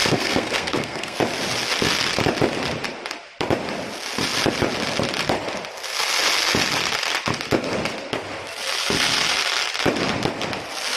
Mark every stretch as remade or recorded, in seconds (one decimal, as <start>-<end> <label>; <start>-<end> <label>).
0.0-1.2 remade; 1.2-11.0 recorded